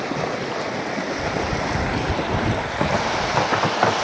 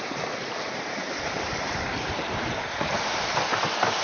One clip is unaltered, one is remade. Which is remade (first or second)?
second